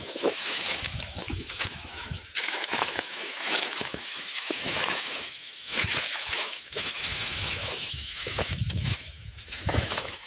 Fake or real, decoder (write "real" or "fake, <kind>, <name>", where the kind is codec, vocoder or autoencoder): fake, autoencoder, DAC-VAE